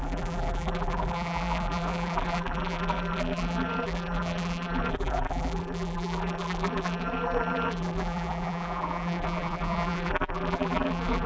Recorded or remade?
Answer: remade